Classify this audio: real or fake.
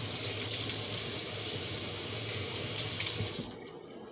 real